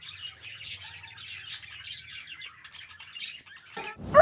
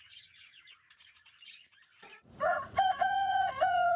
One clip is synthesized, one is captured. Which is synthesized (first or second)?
second